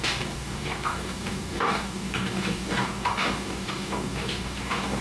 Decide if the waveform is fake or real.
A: fake